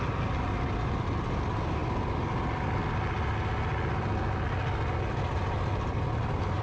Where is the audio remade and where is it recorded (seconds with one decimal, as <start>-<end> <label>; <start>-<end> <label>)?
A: 0.0-6.6 recorded